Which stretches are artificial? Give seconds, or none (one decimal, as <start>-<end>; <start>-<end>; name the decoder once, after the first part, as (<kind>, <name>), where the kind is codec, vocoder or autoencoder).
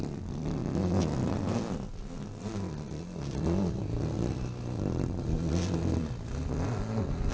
none